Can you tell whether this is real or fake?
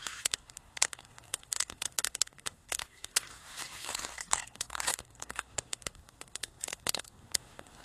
fake